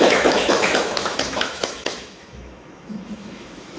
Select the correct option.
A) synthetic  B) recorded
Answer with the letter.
A